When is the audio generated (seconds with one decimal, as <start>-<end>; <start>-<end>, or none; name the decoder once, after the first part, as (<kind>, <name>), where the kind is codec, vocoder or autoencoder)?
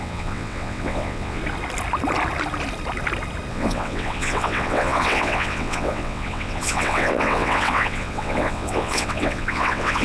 0.0-1.4 (vocoder, WaveNeXt); 3.5-10.0